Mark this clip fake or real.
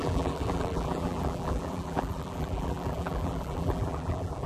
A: fake